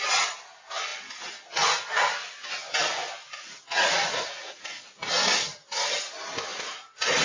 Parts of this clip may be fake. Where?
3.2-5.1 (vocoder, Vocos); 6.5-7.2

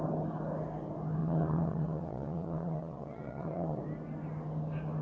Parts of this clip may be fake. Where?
1.2-3.8 (vocoder, Vocos)

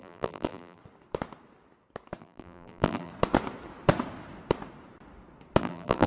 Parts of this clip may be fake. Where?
0.0-0.8 (vocoder, BigVGAN v2); 2.2-3.1; 5.6-6.1

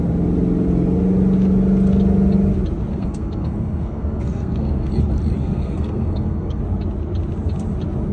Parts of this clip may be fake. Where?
2.9-4.9 (codec, SNAC); 5.4-6.6

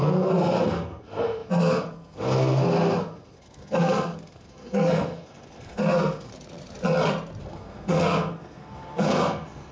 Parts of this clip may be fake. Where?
0.0-6.3 (codec, SNAC); 7.4-9.7

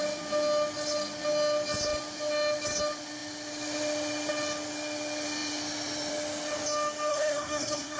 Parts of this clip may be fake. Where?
7.1-8.0 (codec, SNAC)

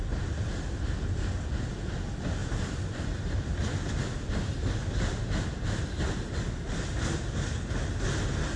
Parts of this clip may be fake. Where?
2.4-5.2 (vocoder, BigVGAN v2)